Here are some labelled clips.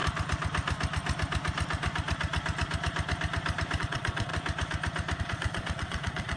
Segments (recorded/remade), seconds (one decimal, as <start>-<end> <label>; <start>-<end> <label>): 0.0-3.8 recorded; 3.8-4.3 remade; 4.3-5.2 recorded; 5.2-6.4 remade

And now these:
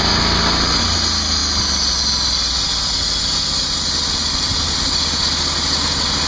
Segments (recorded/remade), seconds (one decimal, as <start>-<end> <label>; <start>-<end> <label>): 0.0-6.3 recorded

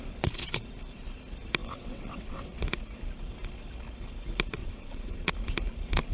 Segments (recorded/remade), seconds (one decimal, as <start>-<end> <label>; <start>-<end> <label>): 0.0-1.6 recorded; 1.6-2.6 remade; 2.6-4.6 recorded; 4.6-5.3 remade; 5.3-6.1 recorded